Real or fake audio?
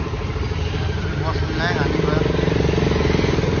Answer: real